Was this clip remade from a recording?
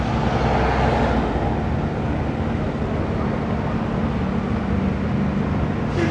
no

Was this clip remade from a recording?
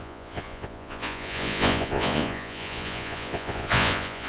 yes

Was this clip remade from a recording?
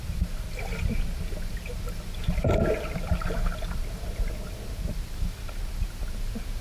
no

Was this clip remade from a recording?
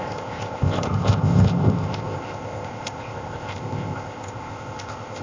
yes